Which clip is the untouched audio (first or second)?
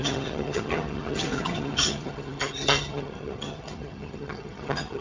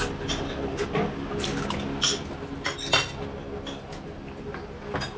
second